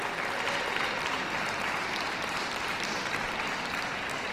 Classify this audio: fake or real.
real